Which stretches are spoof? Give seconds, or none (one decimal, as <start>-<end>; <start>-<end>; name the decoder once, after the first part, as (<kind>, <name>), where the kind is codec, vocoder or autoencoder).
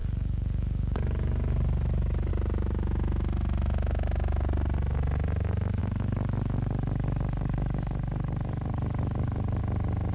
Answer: 0.0-2.3 (codec, DAC); 5.8-9.6